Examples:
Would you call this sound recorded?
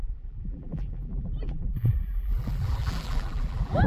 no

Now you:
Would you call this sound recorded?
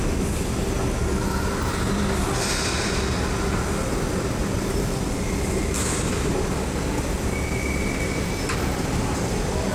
yes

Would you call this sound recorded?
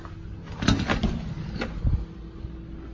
yes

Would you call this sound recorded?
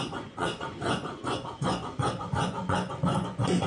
no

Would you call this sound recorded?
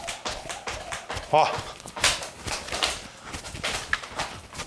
no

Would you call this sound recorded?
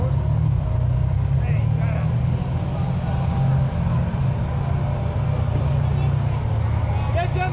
yes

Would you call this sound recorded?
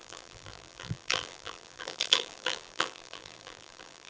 no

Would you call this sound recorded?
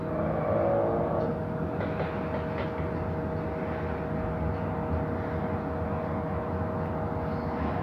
yes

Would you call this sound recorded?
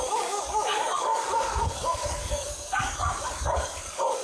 no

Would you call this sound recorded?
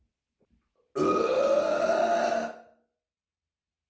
yes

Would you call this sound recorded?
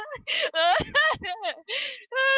yes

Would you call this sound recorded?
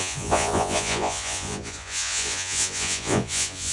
no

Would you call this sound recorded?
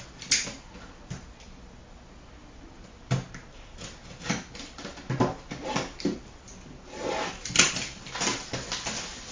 yes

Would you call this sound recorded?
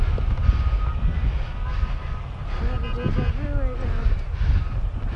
yes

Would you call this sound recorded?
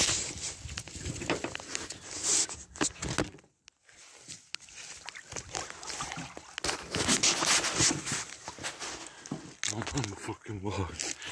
yes